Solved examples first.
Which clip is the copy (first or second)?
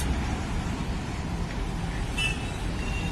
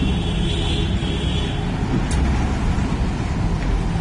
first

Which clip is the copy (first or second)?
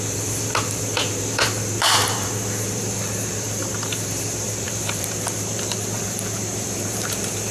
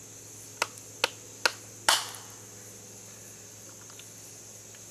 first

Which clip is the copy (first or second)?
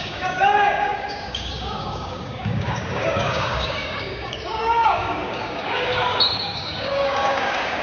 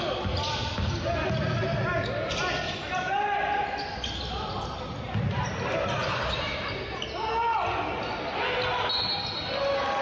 first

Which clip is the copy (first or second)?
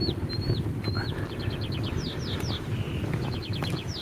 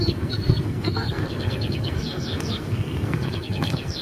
second